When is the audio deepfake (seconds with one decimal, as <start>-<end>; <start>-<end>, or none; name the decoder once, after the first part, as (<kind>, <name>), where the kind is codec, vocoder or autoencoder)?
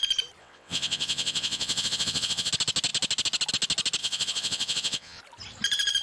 0.4-2.5 (vocoder, WaveNeXt); 4.0-5.2